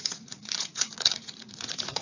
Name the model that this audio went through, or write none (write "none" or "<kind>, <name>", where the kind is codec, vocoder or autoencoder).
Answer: vocoder, Vocos